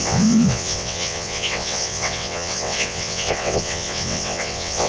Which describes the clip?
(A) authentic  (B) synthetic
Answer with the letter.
B